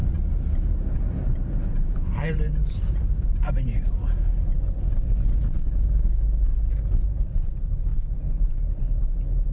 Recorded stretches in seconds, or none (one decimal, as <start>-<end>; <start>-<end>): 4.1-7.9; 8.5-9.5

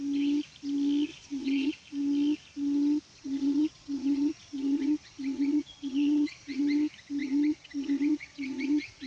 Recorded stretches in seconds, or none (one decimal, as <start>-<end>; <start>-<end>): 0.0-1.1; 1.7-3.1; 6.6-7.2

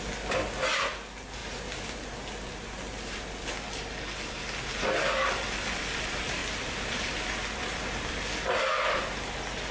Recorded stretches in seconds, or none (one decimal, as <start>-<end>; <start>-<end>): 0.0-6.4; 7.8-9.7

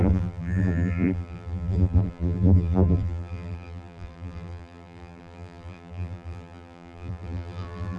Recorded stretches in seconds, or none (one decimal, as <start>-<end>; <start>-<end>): none

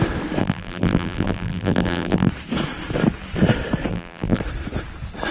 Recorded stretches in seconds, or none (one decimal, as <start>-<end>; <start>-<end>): 0.0-0.4; 2.3-3.9; 4.4-5.3

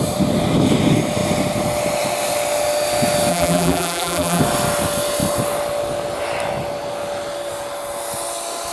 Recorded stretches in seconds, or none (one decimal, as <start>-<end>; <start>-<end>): 0.0-3.3; 4.4-8.7

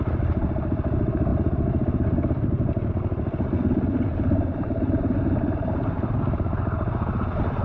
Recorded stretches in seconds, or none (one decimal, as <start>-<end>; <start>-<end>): 0.0-4.1